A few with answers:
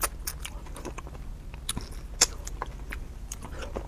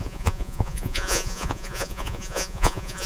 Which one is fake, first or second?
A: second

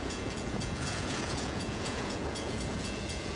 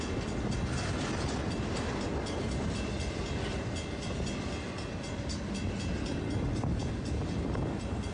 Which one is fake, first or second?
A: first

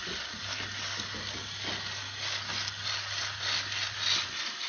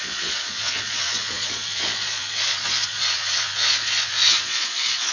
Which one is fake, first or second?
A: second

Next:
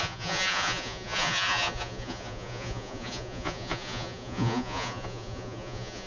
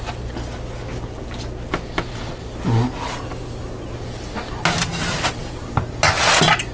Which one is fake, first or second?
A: first